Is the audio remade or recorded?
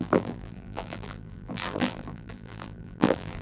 remade